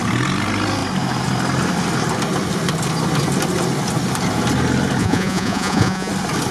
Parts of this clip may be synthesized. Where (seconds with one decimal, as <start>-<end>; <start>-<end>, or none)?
5.0-6.1